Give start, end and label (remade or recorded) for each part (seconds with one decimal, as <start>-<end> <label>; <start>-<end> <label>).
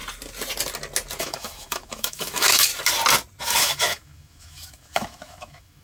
0.0-1.2 recorded; 1.2-2.7 remade; 2.7-3.4 recorded; 3.4-5.8 remade